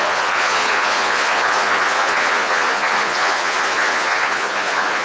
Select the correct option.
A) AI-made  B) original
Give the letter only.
A